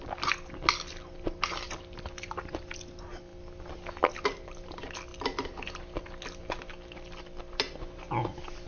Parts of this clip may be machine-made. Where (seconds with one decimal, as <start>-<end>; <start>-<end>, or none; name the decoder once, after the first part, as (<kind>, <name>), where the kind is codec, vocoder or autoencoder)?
none